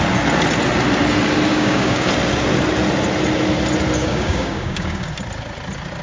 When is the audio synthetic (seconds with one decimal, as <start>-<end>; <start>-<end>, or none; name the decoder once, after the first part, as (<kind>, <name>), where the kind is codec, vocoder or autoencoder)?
1.5-2.1 (codec, DAC); 4.0-5.1